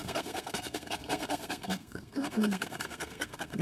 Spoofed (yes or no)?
yes